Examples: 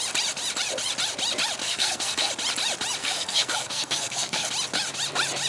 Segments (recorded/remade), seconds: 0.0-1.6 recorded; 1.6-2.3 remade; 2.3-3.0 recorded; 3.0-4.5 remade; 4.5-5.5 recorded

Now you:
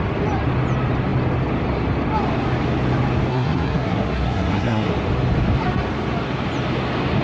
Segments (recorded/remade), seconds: 0.0-3.3 recorded; 3.3-4.9 remade; 4.9-7.2 recorded

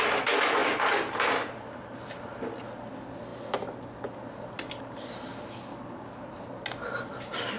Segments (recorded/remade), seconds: 0.0-5.7 recorded; 5.7-6.3 remade; 6.3-7.6 recorded

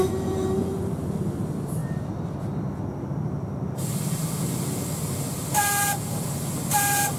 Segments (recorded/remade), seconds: 0.0-7.2 recorded

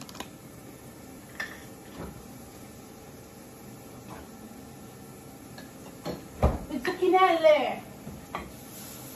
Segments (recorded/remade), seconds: 0.0-0.4 recorded; 0.4-1.2 remade; 1.2-1.6 recorded; 1.6-4.2 remade; 4.2-6.7 recorded; 6.7-7.4 remade; 7.4-9.2 recorded

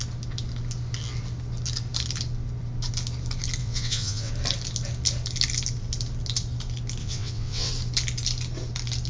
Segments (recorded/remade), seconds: 0.0-3.6 recorded; 3.6-4.3 remade; 4.3-7.0 recorded; 7.0-7.7 remade; 7.7-9.1 recorded

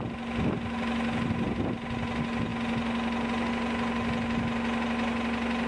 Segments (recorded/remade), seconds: 0.0-5.7 recorded